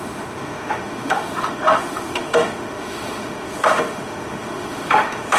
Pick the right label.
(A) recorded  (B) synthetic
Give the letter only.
B